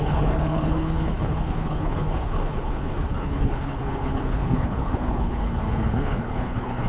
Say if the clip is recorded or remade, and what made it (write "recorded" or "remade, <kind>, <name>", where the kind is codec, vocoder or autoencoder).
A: remade, codec, HILCodec